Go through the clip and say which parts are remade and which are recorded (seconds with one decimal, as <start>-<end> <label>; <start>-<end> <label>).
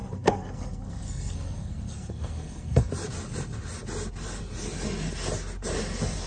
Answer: 0.0-2.9 remade; 2.9-6.3 recorded